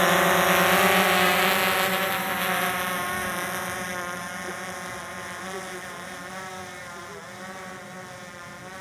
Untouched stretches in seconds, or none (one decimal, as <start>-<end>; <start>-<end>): 0.0-8.8